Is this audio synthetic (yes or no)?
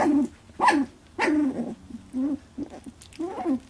no